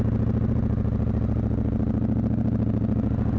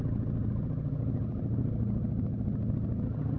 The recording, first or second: first